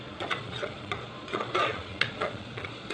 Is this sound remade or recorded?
remade